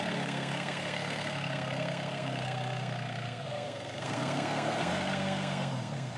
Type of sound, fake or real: fake